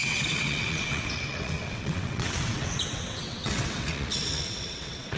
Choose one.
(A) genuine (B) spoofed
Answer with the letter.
B